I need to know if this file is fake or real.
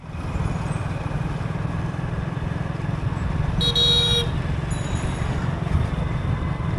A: real